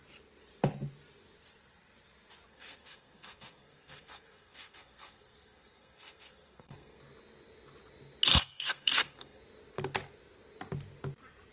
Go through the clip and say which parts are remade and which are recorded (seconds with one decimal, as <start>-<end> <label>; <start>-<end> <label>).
0.0-2.5 recorded; 2.5-7.0 remade; 7.0-8.3 recorded; 8.3-9.4 remade; 9.4-11.5 recorded